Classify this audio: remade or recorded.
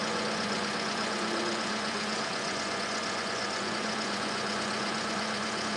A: remade